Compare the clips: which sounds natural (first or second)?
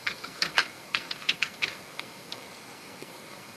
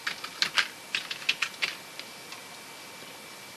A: second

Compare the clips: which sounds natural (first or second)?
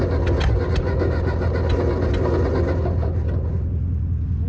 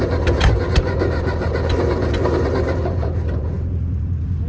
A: first